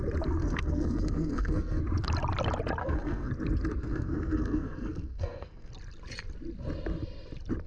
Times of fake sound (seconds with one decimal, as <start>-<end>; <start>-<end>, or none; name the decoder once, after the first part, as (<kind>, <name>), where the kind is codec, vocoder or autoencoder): 0.4-1.8 (codec, SNAC); 2.8-3.3; 3.8-5.7